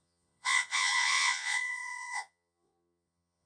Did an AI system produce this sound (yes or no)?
yes